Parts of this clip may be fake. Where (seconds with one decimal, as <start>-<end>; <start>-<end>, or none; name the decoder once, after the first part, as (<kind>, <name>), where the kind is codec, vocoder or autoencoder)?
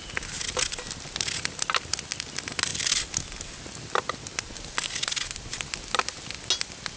none